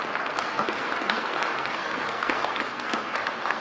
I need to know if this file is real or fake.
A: fake